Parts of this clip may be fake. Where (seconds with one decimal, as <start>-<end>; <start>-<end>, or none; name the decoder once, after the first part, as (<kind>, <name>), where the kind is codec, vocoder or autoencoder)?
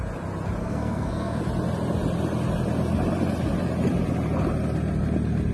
0.6-1.4 (codec, SNAC)